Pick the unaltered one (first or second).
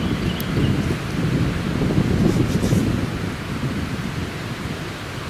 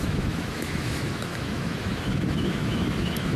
first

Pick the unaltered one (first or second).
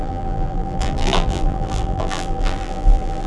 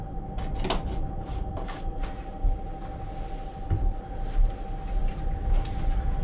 second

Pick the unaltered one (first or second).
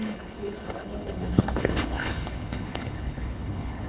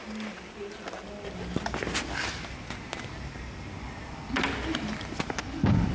second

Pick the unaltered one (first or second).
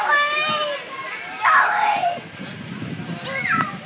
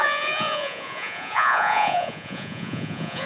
first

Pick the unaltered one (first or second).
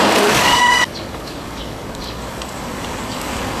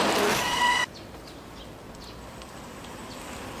second